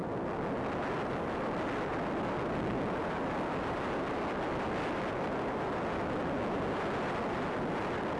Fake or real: real